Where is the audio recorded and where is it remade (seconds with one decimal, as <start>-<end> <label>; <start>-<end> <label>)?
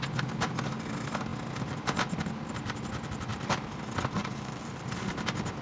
0.0-3.3 recorded; 3.3-3.8 remade; 3.8-4.2 recorded; 4.2-4.8 remade; 4.8-5.6 recorded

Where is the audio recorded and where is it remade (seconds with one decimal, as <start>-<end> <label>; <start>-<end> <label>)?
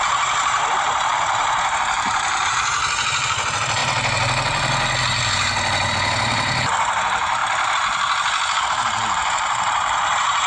0.0-3.8 remade; 3.8-5.9 recorded; 5.9-7.4 remade; 7.4-8.6 recorded; 8.6-10.5 remade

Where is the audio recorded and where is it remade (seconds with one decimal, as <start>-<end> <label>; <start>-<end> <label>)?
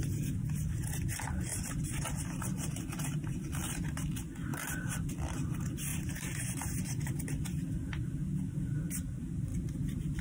0.0-1.5 recorded; 1.5-3.9 remade; 3.9-4.5 recorded; 4.5-5.1 remade; 5.1-5.9 recorded; 5.9-7.4 remade; 7.4-9.5 recorded; 9.5-10.2 remade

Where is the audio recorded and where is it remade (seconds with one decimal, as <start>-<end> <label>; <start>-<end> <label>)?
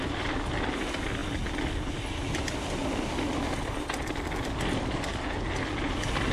0.0-6.3 recorded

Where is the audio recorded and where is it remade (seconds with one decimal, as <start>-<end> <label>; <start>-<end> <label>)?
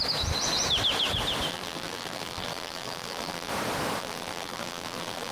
0.0-1.5 recorded; 1.5-3.5 remade; 3.5-4.0 recorded; 4.0-5.3 remade